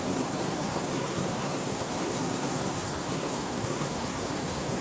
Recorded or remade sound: remade